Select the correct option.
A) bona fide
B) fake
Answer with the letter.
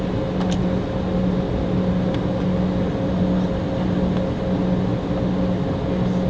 A